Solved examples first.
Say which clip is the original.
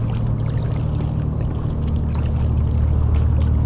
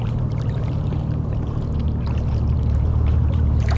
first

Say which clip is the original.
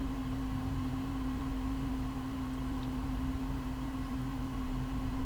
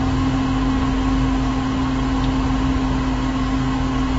second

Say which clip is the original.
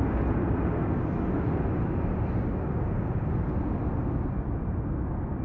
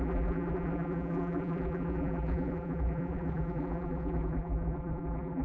first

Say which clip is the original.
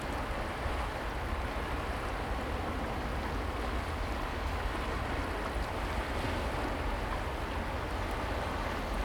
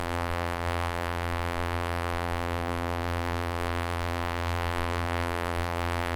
first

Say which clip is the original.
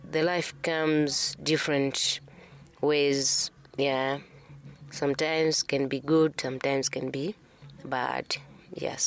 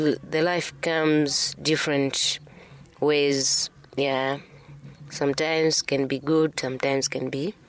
first